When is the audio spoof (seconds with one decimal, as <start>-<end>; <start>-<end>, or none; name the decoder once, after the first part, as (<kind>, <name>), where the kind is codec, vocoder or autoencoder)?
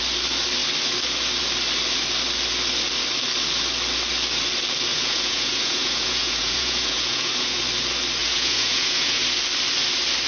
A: 4.9-7.6 (vocoder, Vocos); 8.2-9.2